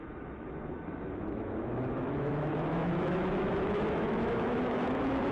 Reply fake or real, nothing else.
fake